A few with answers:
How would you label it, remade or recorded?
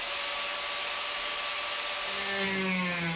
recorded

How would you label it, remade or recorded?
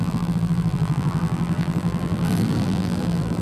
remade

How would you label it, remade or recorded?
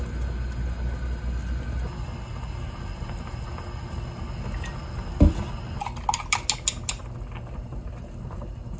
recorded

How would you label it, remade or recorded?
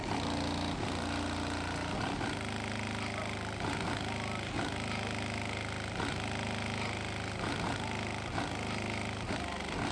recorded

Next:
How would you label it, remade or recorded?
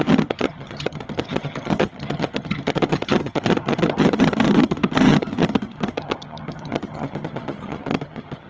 remade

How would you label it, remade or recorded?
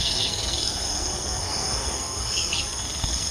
remade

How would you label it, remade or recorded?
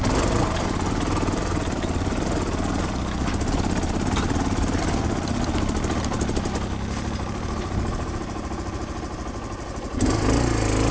recorded